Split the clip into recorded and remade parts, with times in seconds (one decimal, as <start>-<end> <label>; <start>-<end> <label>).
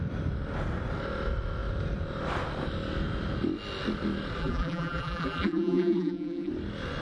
0.0-4.4 recorded; 4.4-6.5 remade; 6.5-7.0 recorded